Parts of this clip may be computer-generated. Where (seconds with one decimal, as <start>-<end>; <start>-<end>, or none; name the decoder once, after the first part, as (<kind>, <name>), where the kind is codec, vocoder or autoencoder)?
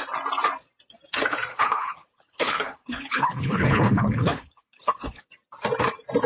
1.5-5.2 (codec, HILCodec)